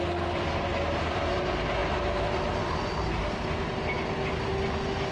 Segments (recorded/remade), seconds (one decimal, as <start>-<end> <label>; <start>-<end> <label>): 0.0-0.7 recorded; 0.7-1.3 remade; 1.3-5.1 recorded